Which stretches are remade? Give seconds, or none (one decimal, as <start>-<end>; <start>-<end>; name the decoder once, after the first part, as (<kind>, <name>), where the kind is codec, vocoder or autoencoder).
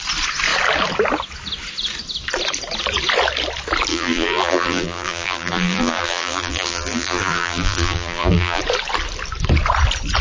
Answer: 3.9-8.6 (vocoder, BigVGAN v2)